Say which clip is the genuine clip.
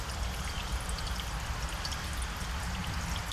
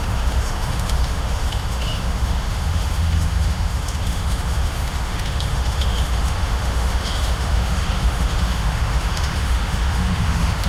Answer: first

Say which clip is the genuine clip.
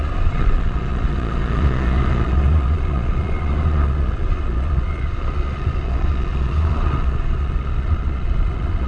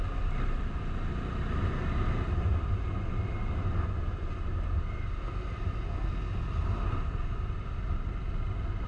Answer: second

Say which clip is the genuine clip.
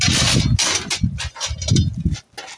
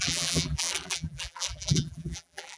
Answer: first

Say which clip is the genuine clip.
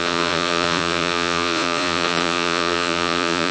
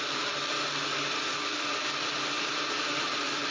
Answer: second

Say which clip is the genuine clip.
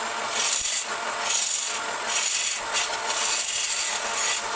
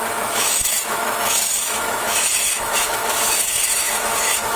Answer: first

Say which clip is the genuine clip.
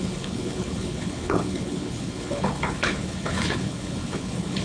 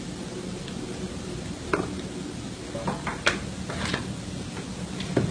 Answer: second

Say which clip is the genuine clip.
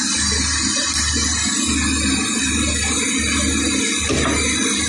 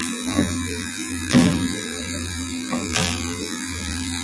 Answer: first